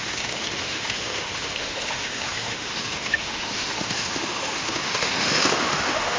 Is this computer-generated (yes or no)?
yes